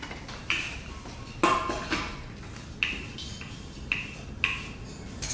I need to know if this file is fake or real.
real